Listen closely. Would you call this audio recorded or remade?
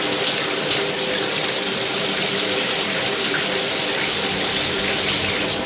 recorded